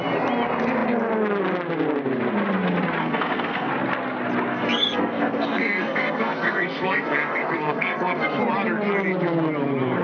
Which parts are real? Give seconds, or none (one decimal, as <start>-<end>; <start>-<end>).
0.0-3.0; 3.7-4.5; 8.4-10.0